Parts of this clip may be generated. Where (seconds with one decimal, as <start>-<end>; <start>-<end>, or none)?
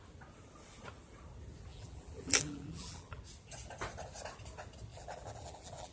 1.7-3.2; 4.9-5.9